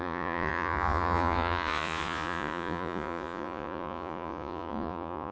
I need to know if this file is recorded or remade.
remade